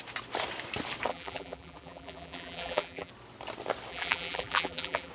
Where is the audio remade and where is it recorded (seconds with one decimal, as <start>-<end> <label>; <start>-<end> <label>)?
0.0-1.1 recorded; 1.1-3.1 remade; 3.1-3.9 recorded; 3.9-5.1 remade